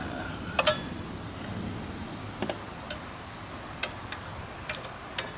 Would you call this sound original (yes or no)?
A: yes